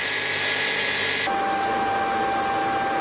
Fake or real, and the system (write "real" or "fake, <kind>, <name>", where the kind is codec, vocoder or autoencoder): real